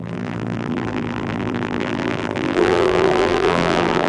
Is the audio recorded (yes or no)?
no